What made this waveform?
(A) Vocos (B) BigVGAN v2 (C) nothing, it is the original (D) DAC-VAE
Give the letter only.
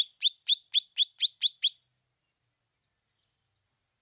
C